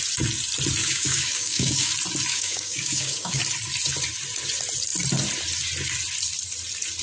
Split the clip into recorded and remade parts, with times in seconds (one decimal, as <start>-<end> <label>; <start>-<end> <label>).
0.0-0.8 recorded; 0.8-1.9 remade; 1.9-2.3 recorded; 2.3-3.4 remade; 3.4-7.0 recorded